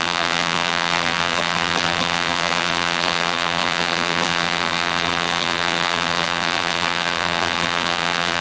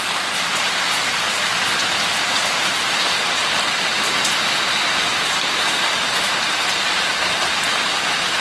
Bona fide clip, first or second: second